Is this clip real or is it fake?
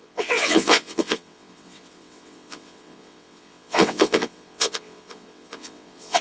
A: fake